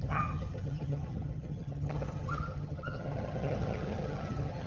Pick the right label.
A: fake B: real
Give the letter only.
A